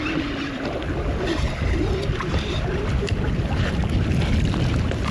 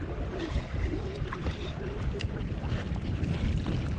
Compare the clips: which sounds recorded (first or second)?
first